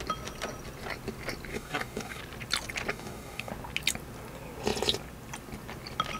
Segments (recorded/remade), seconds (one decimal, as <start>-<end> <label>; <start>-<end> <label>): 0.0-1.5 recorded; 1.5-2.2 remade; 2.2-2.9 recorded; 2.9-3.5 remade; 3.5-6.2 recorded